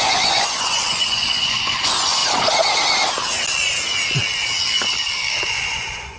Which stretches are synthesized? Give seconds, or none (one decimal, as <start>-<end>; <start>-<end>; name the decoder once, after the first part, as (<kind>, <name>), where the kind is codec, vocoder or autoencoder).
0.0-2.2 (vocoder, Vocos); 5.5-6.2